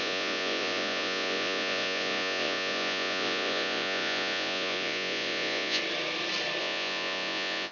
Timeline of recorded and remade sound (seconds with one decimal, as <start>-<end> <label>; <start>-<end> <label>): 0.0-5.8 remade; 5.8-6.6 recorded; 6.6-7.7 remade